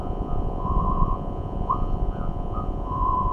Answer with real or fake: fake